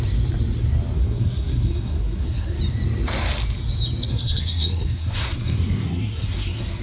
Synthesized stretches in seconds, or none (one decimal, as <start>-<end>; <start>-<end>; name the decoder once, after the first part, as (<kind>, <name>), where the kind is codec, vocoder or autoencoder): 1.0-2.6 (codec, SNAC); 4.1-6.8